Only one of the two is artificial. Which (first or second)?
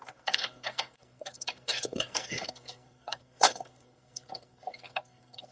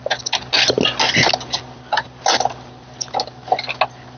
first